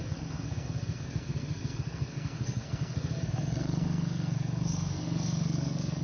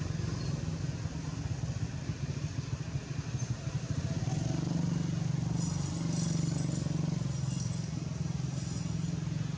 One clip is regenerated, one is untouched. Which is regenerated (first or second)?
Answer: first